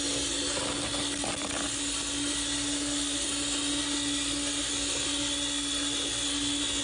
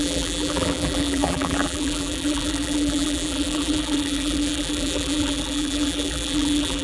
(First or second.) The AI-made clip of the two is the second